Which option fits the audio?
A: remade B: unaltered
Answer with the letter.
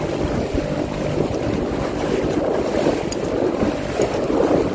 B